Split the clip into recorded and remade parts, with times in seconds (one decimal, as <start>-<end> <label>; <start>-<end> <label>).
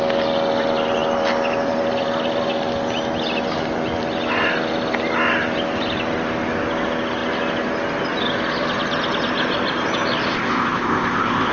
0.0-10.3 recorded; 10.3-11.5 remade